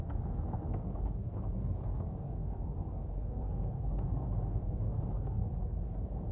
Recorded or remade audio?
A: remade